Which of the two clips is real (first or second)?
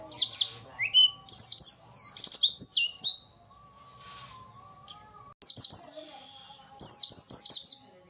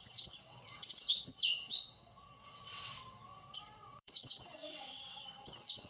first